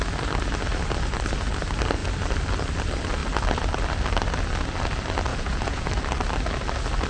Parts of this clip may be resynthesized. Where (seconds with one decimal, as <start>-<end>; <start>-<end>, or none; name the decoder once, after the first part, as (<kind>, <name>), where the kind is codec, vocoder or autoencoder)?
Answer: 5.3-5.9 (vocoder, Vocos)